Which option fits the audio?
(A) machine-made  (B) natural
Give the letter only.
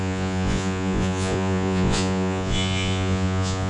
A